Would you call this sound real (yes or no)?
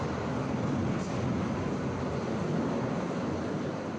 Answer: yes